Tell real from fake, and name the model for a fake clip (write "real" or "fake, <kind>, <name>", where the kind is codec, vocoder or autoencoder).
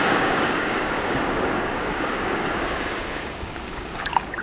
fake, codec, DAC